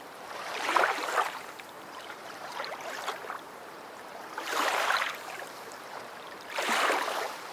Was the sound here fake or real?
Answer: fake